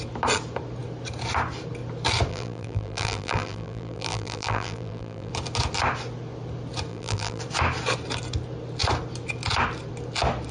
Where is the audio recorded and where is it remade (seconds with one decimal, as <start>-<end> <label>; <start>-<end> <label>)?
0.0-2.3 recorded; 2.3-5.3 remade; 5.3-6.9 recorded; 6.9-7.4 remade; 7.4-10.5 recorded